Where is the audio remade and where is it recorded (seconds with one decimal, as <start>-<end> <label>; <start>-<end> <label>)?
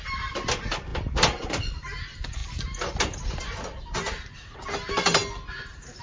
0.0-6.0 recorded